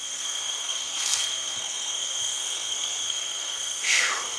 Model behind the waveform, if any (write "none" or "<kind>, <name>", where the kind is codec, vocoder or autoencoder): codec, SNAC